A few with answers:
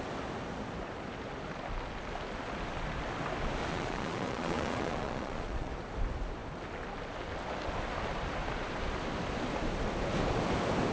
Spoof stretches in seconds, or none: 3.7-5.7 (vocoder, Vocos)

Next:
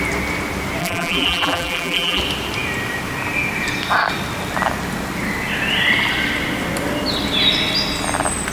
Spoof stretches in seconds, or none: 0.8-2.2 (vocoder, BigVGAN v2)

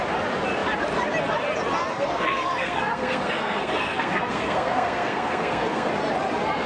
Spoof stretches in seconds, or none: 1.9-5.9 (codec, SNAC)

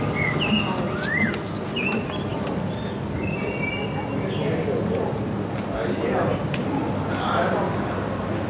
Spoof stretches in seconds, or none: none

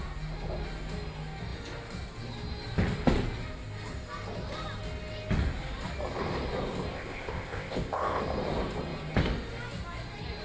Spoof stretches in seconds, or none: 6.9-8.2 (codec, ZipCodec)